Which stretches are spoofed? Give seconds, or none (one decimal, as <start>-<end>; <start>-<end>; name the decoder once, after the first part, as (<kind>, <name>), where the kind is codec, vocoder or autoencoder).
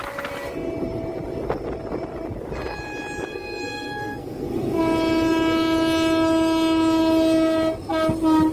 3.3-4.8 (codec, SNAC)